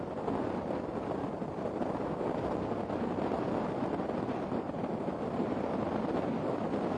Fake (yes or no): no